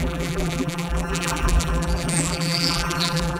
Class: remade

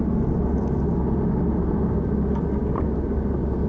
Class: recorded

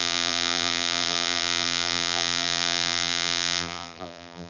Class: remade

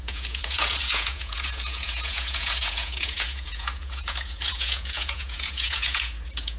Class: remade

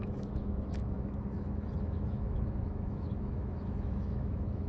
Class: remade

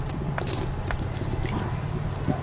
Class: recorded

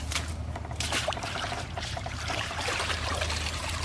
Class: remade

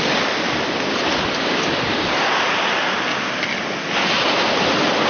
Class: recorded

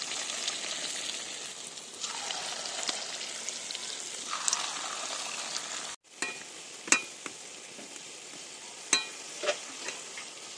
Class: recorded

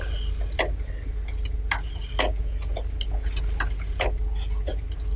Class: recorded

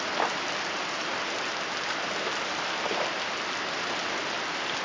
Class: recorded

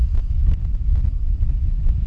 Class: recorded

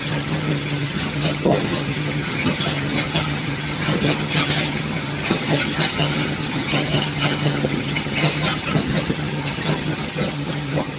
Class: remade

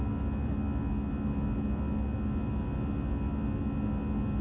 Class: recorded